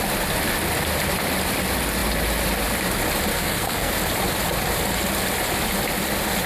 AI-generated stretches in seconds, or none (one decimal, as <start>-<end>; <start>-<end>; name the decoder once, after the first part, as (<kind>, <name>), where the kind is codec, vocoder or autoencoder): 3.3-3.9 (codec, SNAC)